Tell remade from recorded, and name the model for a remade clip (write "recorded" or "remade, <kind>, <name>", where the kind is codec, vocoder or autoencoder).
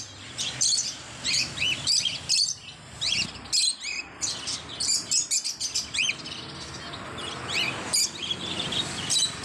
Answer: recorded